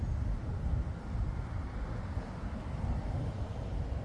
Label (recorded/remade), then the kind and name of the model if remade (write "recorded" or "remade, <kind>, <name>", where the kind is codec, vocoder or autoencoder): recorded